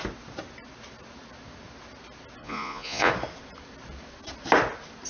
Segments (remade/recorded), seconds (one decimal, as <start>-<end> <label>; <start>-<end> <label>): 0.0-2.4 recorded; 2.4-3.1 remade; 3.1-5.1 recorded